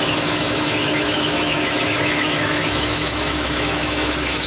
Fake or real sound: fake